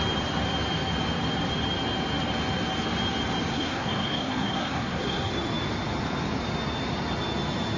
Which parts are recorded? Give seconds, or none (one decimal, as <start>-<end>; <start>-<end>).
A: 0.0-3.5; 5.3-7.8